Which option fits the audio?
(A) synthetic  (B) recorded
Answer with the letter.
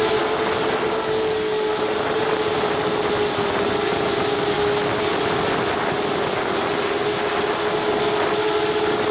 B